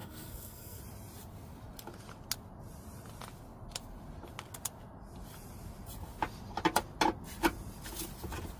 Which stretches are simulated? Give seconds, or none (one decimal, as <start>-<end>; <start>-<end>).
0.0-0.8